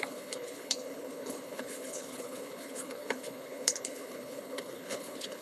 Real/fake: fake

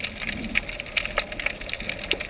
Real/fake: real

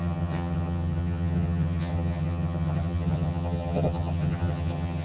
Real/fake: fake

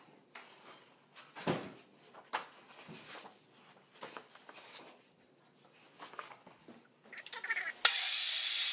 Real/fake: real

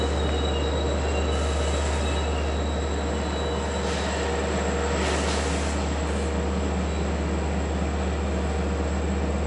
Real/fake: real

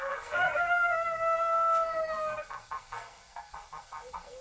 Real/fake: fake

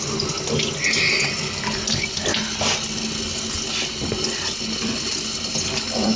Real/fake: real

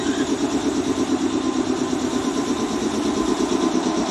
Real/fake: real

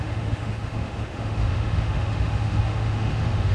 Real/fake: fake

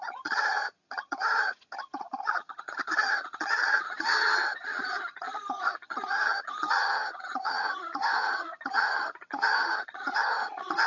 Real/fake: fake